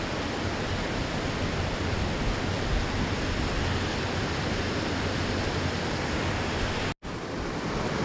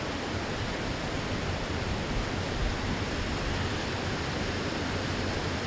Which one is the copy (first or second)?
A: second